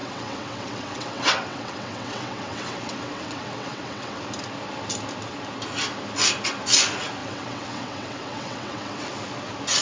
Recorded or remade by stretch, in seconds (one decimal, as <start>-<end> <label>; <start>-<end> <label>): 0.0-4.2 remade; 4.2-7.2 recorded; 7.2-9.1 remade; 9.1-9.8 recorded